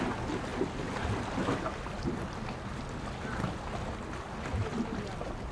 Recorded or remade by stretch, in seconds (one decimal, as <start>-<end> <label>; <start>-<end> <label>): 0.0-5.5 recorded